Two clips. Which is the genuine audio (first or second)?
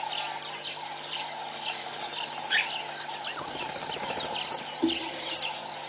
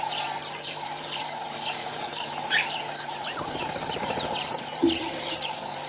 first